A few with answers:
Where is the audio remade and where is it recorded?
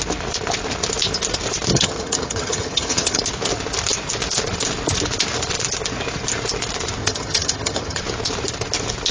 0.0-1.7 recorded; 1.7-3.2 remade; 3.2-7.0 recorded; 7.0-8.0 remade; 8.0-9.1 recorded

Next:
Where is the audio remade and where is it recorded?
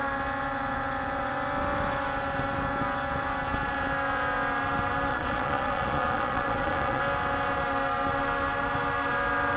0.0-5.1 recorded; 5.1-7.0 remade; 7.0-9.6 recorded